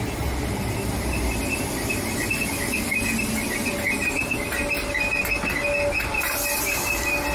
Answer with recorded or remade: recorded